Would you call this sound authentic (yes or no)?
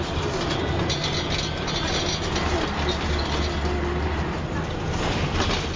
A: yes